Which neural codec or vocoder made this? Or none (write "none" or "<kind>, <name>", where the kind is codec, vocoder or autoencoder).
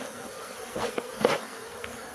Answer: codec, SNAC